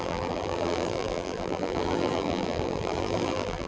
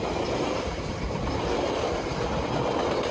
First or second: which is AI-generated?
first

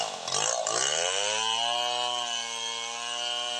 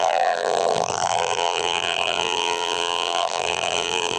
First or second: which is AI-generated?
second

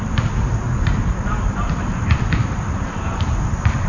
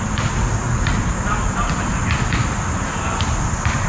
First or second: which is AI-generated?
first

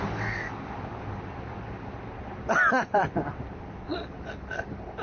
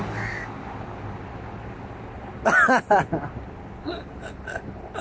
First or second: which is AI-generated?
first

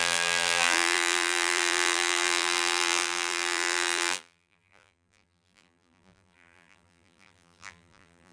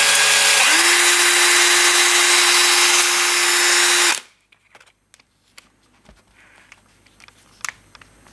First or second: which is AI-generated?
first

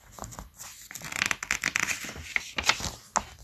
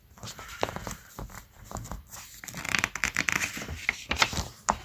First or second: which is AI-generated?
second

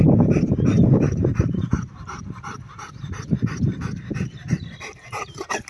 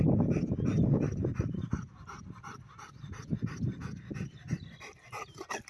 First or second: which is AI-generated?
first